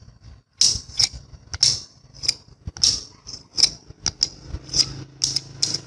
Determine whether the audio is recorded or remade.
recorded